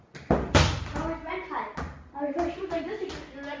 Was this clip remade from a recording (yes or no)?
no